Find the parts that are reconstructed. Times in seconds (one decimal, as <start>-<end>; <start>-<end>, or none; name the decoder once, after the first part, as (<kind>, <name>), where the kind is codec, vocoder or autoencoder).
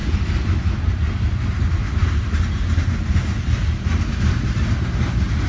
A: none